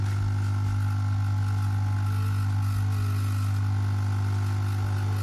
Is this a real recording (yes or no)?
yes